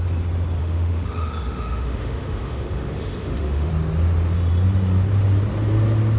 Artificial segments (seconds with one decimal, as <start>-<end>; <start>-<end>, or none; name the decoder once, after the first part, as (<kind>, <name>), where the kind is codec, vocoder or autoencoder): 0.6-3.7 (autoencoder, DAC-VAE)